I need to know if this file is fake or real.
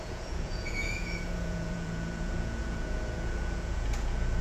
fake